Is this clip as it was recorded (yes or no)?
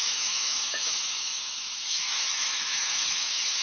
no